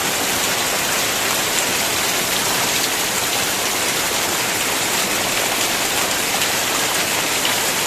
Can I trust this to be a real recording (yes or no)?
no